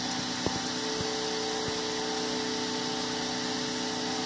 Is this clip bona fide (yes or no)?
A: yes